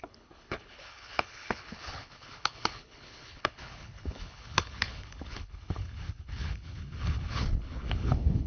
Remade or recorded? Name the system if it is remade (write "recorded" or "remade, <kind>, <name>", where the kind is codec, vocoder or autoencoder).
remade, codec, HILCodec